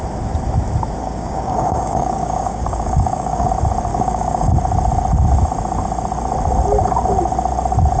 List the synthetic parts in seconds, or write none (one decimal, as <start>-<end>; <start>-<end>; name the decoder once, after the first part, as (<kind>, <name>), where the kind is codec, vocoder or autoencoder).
1.0-3.5 (codec, DAC); 3.9-4.5